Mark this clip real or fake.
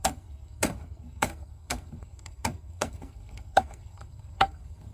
fake